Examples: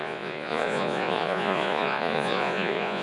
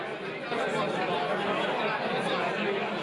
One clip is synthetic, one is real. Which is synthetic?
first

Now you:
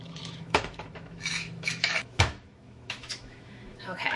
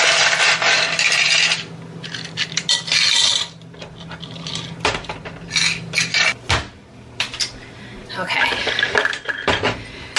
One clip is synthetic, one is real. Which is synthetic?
first